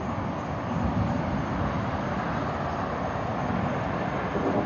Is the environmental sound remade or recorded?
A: recorded